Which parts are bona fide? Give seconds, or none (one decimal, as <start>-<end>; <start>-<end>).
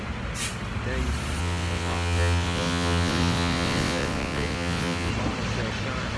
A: 0.0-1.4; 5.1-6.2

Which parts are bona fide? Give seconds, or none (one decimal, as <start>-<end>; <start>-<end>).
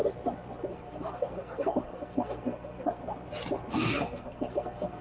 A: 0.0-0.7; 3.0-3.7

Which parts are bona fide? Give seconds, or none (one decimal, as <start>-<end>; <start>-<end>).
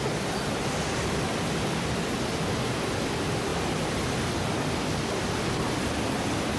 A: 0.0-6.6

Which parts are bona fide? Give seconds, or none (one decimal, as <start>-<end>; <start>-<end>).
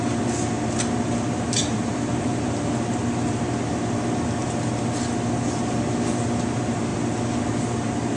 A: 0.0-1.6; 2.7-8.2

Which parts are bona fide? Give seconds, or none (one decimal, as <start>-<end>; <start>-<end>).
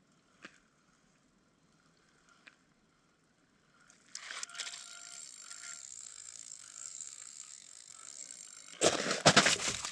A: 0.0-5.8; 8.2-9.9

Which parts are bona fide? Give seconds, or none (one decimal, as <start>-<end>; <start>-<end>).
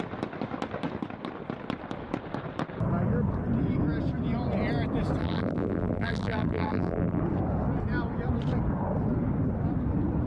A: 0.0-5.2; 7.2-10.3